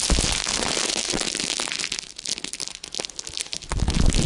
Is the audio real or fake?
real